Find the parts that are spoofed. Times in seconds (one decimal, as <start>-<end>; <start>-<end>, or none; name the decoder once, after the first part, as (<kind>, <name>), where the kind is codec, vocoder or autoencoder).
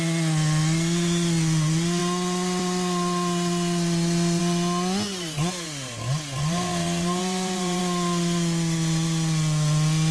5.1-7.8 (vocoder, BigVGAN v2)